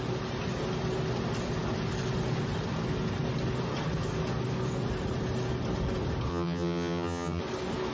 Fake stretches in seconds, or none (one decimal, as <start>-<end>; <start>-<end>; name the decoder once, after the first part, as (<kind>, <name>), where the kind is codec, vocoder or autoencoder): 6.3-7.4 (vocoder, HiFi-GAN)